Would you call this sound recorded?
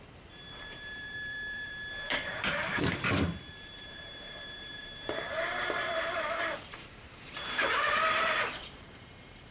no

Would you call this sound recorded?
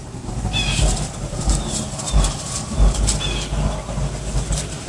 no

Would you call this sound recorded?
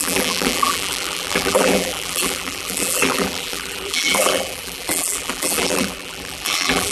no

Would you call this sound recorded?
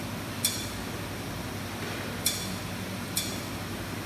yes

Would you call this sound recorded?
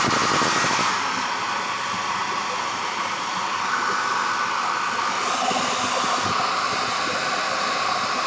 yes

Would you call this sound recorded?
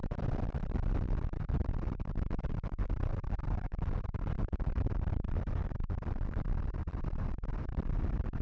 no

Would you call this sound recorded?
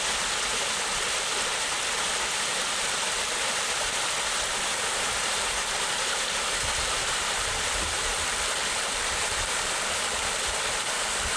no